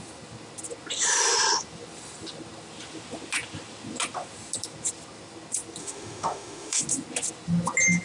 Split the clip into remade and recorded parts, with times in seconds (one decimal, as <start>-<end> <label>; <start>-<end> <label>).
0.0-5.8 recorded; 5.8-6.8 remade; 6.8-8.0 recorded